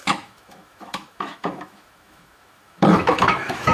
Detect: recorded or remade remade